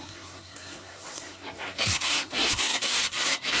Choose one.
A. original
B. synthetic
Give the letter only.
B